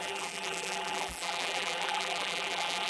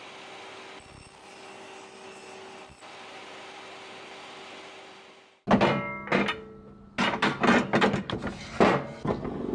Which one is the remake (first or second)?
first